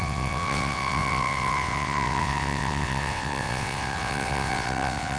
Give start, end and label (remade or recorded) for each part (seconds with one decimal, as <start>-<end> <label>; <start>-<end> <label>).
0.0-5.2 remade